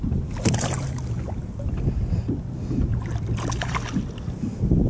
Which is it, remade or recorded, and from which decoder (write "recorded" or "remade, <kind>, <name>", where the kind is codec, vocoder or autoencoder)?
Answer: recorded